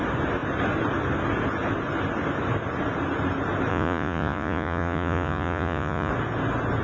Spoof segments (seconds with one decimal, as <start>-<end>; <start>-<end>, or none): 3.7-6.1